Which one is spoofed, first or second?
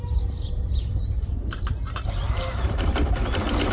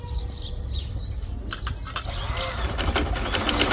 first